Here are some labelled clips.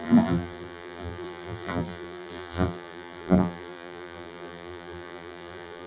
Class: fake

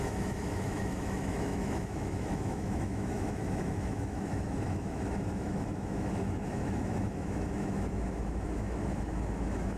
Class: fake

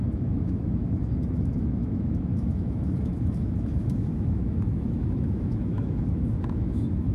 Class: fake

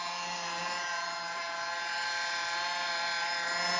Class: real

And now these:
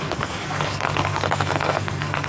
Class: fake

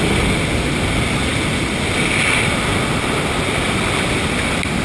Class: real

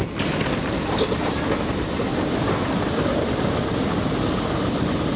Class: real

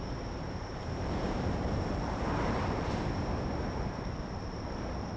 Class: fake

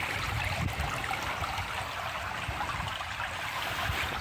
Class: real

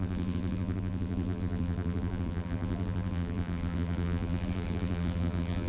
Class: fake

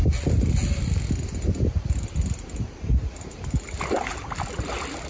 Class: real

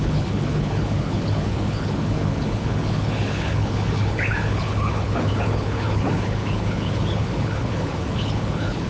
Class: fake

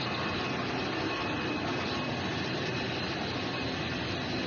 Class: real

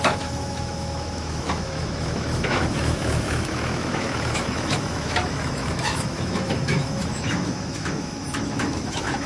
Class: fake